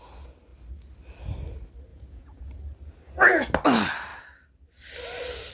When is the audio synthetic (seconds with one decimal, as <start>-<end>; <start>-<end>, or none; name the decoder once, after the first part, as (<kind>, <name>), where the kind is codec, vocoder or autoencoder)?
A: 1.9-2.6 (vocoder, Vocos)